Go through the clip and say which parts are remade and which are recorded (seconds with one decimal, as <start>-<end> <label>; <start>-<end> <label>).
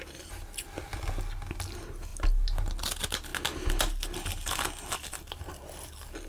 0.0-6.3 recorded